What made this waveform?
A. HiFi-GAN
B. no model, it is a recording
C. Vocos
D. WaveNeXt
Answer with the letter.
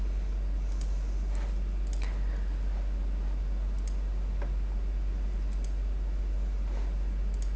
B